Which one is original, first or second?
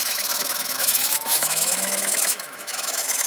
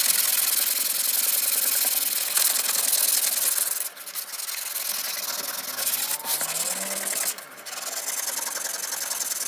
second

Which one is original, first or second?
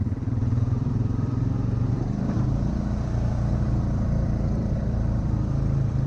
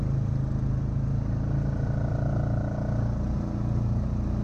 second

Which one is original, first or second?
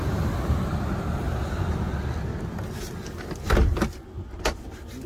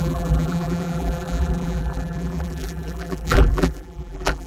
first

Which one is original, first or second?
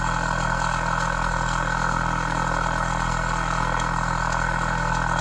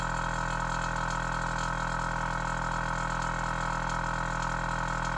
second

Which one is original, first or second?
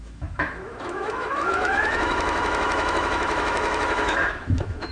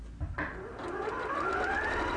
second